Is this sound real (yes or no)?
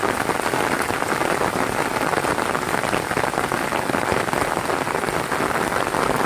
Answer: yes